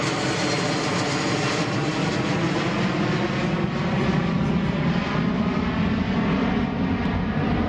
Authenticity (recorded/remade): recorded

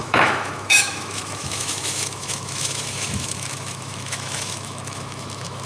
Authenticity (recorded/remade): remade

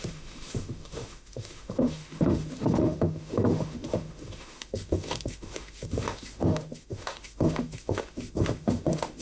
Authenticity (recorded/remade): remade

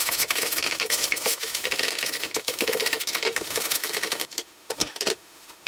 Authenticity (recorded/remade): remade